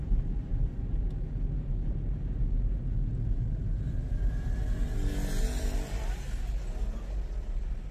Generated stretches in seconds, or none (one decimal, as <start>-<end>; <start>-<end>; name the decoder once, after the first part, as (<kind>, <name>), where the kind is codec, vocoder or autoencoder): none